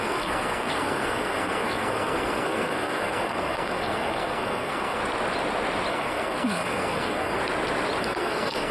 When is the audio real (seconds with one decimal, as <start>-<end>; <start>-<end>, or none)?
5.0-5.9; 7.4-8.0